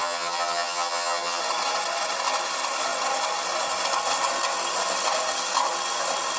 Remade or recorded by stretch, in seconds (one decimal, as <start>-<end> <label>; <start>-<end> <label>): 0.0-1.4 remade; 1.4-6.4 recorded